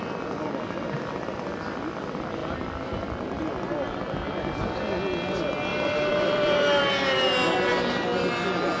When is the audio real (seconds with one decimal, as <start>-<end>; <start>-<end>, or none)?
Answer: 0.0-5.7; 6.8-8.8